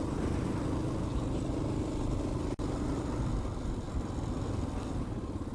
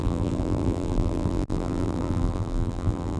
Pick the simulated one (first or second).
second